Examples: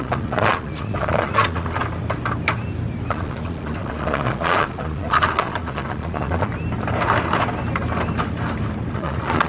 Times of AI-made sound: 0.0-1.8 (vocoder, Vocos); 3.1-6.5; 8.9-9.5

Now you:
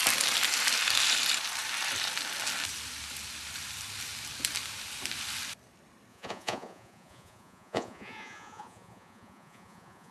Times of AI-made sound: 6.1-10.1 (vocoder, Vocos)

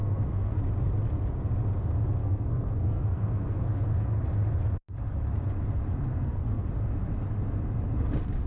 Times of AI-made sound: 0.0-0.6 (codec, SNAC); 2.2-4.2; 6.1-6.7